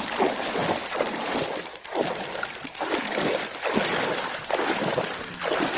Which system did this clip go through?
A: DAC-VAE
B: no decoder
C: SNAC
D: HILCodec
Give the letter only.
B